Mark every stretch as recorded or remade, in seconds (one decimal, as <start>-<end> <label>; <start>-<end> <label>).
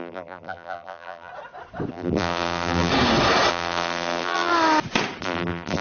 0.0-1.3 remade; 1.3-1.9 recorded; 1.9-2.9 remade; 2.9-3.5 recorded; 3.5-4.5 remade; 4.5-5.2 recorded; 5.2-5.8 remade